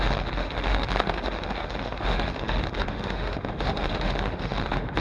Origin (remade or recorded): remade